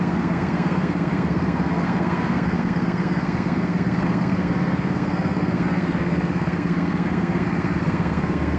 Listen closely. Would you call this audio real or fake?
fake